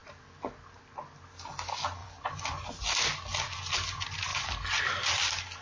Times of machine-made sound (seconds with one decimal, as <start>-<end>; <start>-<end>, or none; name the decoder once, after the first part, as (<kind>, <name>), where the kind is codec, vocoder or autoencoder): 0.0-0.5 (vocoder, BigVGAN v2); 2.0-2.6; 4.3-4.8